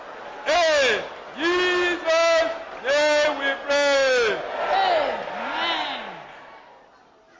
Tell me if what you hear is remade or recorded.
recorded